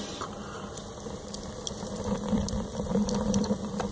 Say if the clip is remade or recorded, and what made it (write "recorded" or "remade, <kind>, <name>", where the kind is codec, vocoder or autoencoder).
remade, vocoder, BigVGAN v2